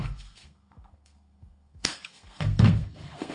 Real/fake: fake